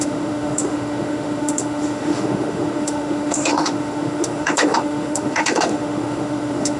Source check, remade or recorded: remade